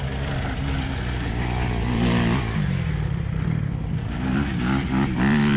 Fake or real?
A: real